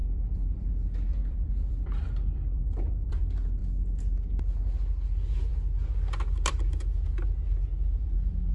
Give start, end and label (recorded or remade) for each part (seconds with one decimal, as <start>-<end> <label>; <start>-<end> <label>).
0.0-0.7 remade; 0.7-1.1 recorded; 1.1-3.2 remade; 3.2-8.5 recorded